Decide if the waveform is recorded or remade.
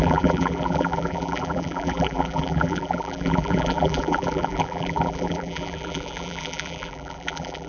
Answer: remade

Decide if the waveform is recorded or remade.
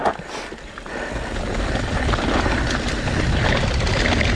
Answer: recorded